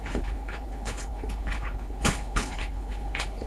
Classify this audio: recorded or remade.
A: remade